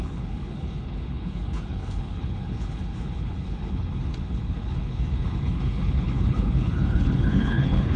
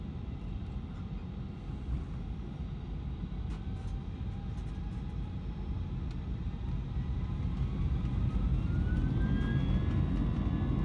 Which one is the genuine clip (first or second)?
second